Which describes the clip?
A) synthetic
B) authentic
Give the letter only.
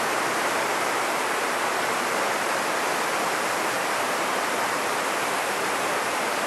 B